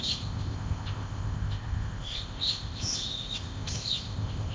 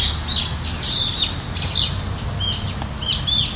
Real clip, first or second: second